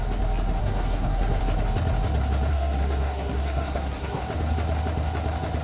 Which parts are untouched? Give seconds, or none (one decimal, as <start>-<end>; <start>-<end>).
0.0-0.6; 1.4-2.5; 4.2-5.6